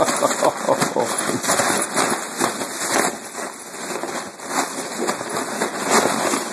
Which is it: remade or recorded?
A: recorded